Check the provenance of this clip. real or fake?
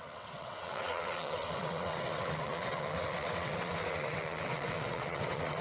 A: fake